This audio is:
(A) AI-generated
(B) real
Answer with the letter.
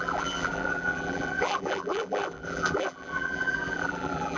A